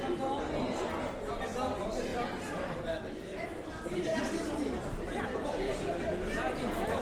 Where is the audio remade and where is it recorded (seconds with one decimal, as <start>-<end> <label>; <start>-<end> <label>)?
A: 0.0-2.1 recorded; 2.1-2.9 remade; 2.9-7.0 recorded